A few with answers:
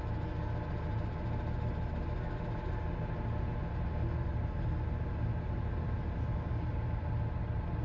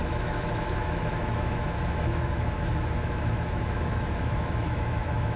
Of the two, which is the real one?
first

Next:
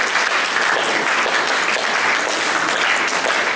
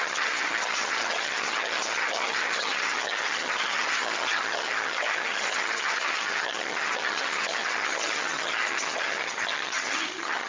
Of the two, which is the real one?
first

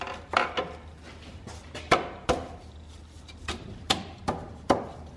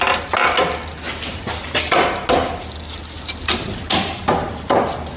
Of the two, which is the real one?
second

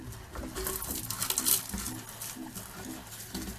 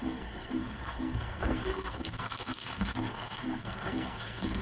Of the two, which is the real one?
first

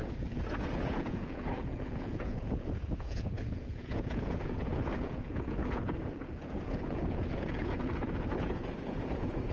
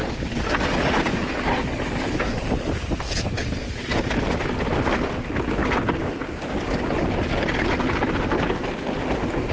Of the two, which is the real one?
second